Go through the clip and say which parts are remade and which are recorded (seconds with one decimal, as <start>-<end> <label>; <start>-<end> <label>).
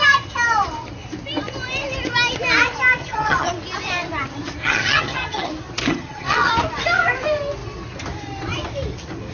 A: 0.0-3.0 recorded; 3.0-3.5 remade; 3.5-4.6 recorded; 4.6-5.5 remade; 5.5-5.9 recorded; 5.9-6.5 remade; 6.5-9.3 recorded